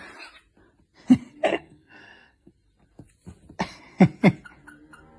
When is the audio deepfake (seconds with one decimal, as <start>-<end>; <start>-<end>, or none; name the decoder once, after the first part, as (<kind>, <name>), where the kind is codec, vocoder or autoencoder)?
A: 1.5-2.5 (codec, SNAC)

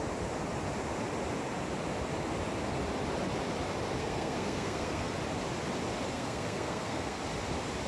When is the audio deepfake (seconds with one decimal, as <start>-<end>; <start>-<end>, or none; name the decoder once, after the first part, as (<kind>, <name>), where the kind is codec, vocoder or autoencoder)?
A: 4.0-5.1 (codec, SNAC); 6.1-7.2